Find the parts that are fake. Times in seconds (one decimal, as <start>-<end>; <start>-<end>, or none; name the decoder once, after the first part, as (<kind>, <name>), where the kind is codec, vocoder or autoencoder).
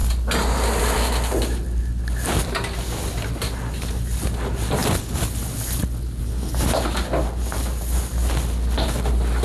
none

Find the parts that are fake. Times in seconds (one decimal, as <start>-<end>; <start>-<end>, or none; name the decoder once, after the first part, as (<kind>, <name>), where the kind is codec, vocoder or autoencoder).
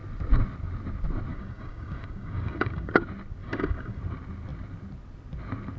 1.3-2.9 (codec, DAC); 3.4-4.0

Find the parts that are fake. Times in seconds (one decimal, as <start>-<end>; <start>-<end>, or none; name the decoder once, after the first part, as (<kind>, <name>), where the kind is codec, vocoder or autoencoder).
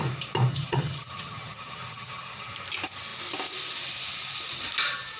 0.5-2.5 (vocoder, HiFi-GAN)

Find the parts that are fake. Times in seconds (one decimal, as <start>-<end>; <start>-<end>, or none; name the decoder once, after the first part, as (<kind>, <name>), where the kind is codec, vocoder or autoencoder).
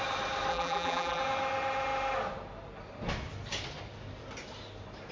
0.5-1.2 (vocoder, BigVGAN v2)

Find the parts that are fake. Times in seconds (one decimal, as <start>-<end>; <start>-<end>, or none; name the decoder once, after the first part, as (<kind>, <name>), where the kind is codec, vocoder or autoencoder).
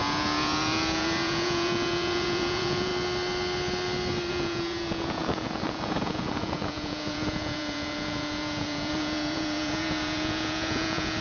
0.0-2.9 (vocoder, Vocos); 4.3-11.2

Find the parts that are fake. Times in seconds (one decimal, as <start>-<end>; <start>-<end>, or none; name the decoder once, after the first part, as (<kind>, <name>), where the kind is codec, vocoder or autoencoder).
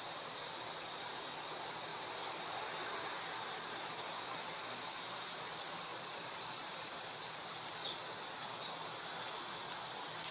5.9-7.7 (vocoder, BigVGAN v2)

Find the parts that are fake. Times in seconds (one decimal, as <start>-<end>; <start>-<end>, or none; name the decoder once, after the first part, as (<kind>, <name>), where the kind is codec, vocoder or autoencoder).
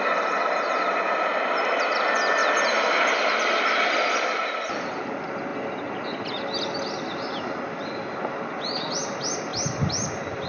2.4-3.2 (vocoder, BigVGAN v2)